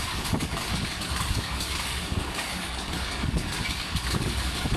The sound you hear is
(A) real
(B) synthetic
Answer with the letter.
B